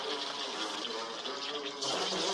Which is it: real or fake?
real